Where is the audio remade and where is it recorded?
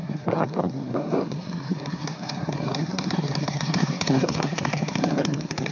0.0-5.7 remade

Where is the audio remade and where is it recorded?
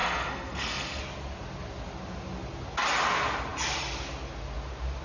0.0-1.0 remade; 1.0-5.0 recorded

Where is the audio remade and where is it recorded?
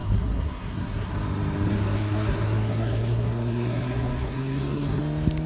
0.0-1.1 remade; 1.1-1.7 recorded; 1.7-5.0 remade; 5.0-5.5 recorded